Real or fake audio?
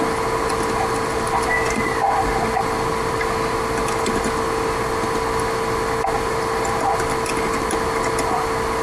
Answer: real